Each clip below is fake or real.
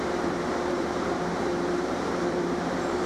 fake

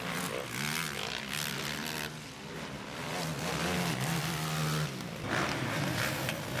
real